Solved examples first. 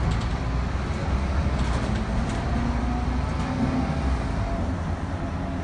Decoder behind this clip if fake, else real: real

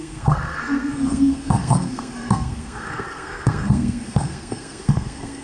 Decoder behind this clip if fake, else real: fake, codec, SNAC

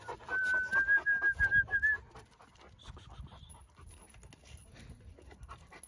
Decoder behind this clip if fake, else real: real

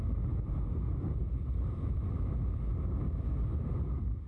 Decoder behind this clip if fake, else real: real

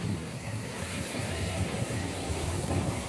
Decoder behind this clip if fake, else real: fake, codec, SNAC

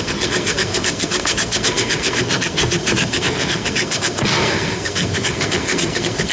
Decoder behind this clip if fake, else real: fake, codec, SNAC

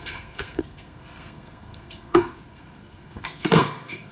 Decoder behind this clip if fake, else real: fake, codec, SNAC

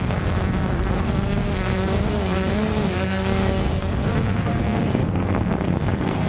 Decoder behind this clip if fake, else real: fake, codec, SNAC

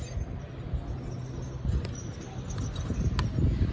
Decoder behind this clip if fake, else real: real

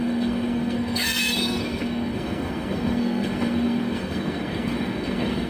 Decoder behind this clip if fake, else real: fake, codec, SNAC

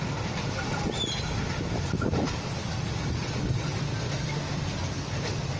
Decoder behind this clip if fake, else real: real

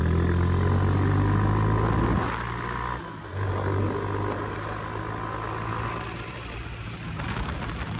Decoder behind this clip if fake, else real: real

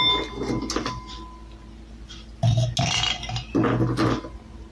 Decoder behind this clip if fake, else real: real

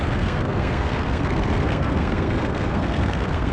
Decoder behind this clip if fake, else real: fake, codec, SNAC